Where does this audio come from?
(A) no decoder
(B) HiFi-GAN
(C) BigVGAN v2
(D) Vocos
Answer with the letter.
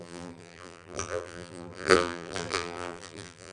C